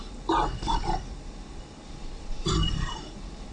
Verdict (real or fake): fake